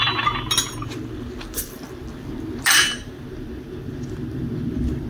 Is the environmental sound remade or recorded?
recorded